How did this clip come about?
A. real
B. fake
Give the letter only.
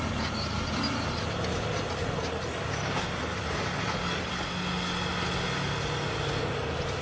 A